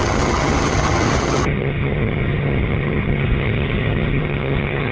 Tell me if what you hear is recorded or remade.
remade